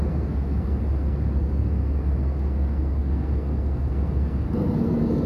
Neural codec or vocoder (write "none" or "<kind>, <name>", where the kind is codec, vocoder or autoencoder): codec, SNAC